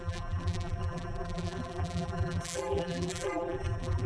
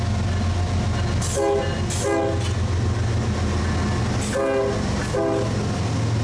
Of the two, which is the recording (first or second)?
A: second